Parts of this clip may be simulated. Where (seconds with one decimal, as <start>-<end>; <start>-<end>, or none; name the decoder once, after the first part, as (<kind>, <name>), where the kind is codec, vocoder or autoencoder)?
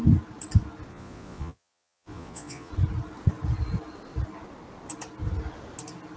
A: 0.9-2.7 (vocoder, Vocos)